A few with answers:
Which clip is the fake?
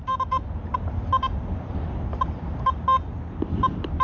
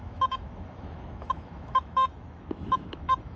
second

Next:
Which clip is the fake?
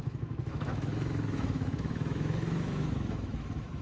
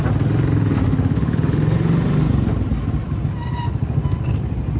first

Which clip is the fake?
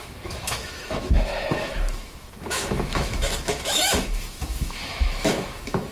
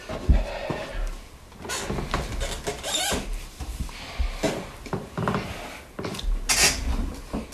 first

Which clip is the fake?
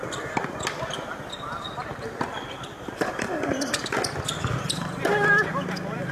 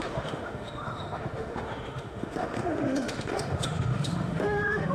second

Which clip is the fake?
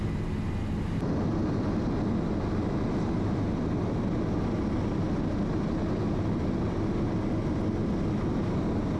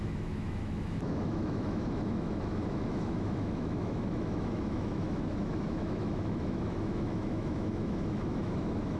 second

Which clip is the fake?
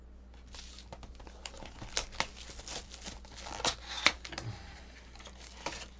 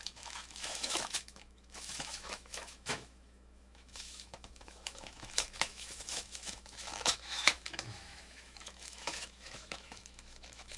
second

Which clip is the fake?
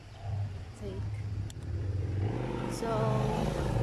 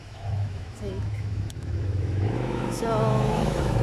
second